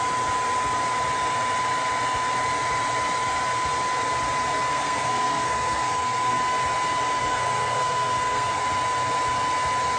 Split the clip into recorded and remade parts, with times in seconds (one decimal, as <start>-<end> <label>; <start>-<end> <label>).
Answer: 0.0-4.7 recorded; 4.7-6.4 remade; 6.4-7.2 recorded; 7.2-8.6 remade; 8.6-10.0 recorded